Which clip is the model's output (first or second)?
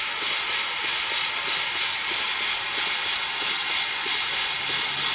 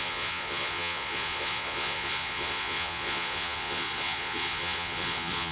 second